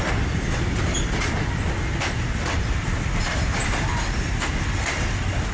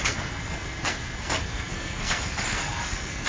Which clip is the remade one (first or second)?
second